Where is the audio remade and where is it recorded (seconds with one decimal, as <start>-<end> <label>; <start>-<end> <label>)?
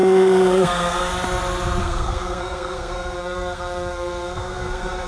0.0-1.1 remade; 1.1-1.8 recorded; 1.8-5.1 remade